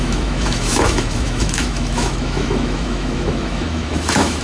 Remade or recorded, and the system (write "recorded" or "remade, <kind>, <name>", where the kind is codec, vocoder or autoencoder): remade, autoencoder, DAC-VAE